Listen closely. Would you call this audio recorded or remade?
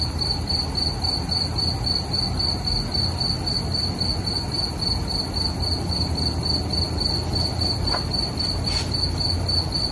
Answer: recorded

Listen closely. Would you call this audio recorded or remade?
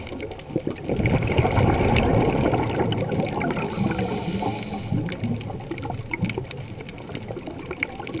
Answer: recorded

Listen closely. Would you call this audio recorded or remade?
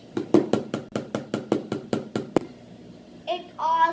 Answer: recorded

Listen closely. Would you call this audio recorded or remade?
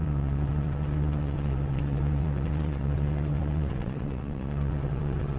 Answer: remade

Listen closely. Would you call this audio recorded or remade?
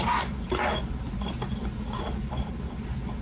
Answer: recorded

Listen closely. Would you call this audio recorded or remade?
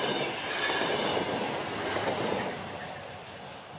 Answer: recorded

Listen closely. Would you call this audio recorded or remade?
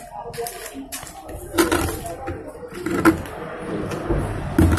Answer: recorded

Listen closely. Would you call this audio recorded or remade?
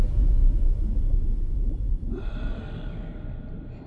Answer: recorded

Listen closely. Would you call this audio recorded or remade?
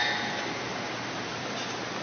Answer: recorded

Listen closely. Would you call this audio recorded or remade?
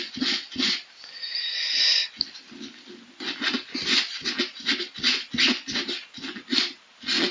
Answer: recorded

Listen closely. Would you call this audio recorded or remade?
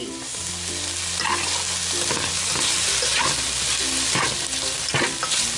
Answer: recorded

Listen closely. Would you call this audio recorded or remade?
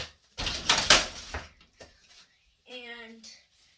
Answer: remade